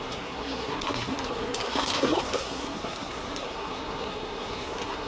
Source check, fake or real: fake